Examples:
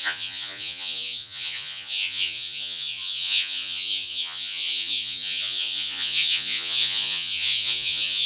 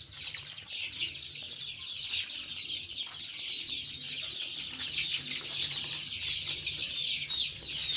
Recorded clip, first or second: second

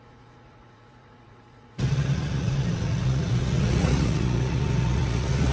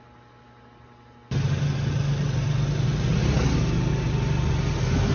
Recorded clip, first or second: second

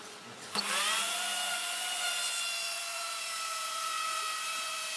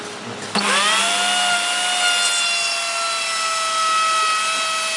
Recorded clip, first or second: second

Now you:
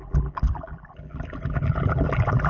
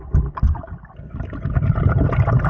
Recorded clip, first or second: second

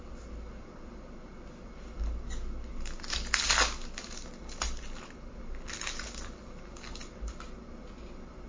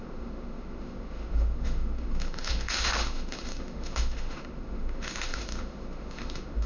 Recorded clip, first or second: first